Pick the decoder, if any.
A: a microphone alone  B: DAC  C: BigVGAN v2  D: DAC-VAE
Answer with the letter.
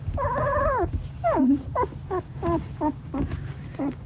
B